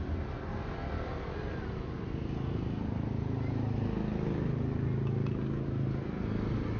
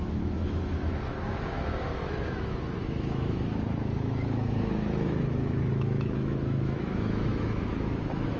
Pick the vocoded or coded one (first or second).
second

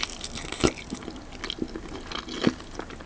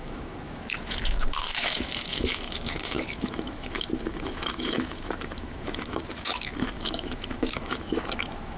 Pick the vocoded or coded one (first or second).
second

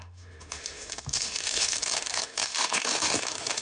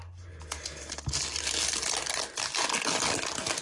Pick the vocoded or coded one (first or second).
first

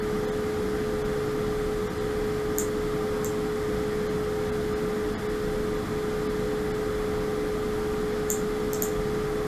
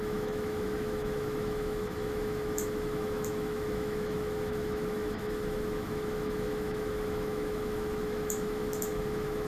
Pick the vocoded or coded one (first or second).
second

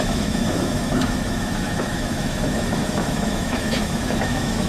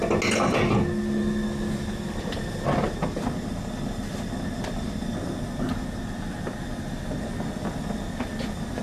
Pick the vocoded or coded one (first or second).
first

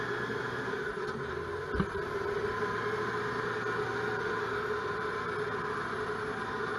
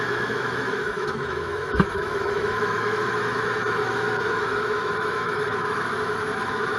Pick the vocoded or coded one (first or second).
second